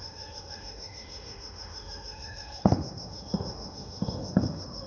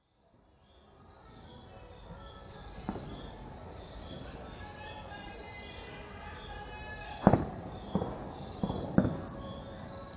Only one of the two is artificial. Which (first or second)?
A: first